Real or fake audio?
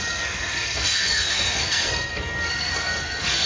fake